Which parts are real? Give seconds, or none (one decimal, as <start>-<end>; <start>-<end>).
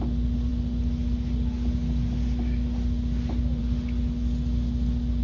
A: 0.0-5.2